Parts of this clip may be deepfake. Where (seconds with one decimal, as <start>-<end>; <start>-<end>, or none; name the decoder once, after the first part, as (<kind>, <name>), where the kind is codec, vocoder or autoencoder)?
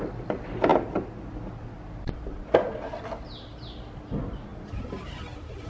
none